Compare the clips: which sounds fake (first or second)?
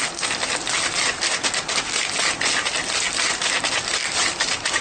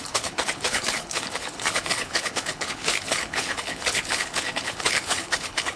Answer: second